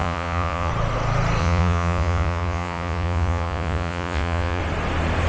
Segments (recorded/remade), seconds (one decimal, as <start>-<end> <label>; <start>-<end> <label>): 0.0-0.7 remade; 0.7-1.4 recorded; 1.4-4.6 remade; 4.6-5.3 recorded